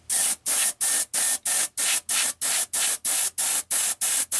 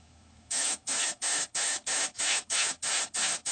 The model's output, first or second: second